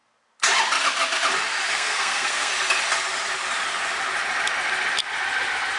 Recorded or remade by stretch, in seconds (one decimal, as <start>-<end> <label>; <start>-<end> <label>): 0.0-1.7 recorded; 1.7-2.5 remade; 2.5-5.8 recorded